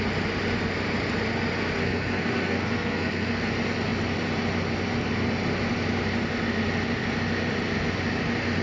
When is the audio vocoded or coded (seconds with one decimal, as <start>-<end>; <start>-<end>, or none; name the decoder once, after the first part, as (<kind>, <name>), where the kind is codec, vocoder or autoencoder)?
1.8-3.5 (codec, SNAC)